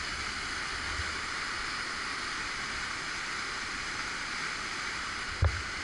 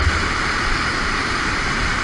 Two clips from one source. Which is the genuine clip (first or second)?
first